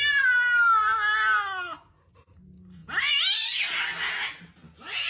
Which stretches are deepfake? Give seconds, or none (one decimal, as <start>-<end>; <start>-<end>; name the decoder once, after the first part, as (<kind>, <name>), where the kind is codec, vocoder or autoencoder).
none